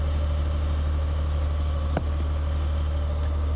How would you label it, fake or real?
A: real